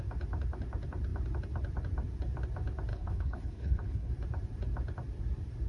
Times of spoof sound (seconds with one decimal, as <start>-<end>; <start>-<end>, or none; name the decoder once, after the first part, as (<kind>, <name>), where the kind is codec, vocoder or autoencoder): 2.9-4.1 (codec, HILCodec)

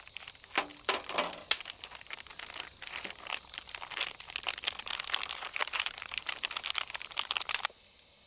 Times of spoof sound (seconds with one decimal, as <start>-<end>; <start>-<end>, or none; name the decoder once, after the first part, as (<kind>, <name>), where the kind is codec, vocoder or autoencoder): 5.6-6.2 (vocoder, BigVGAN v2)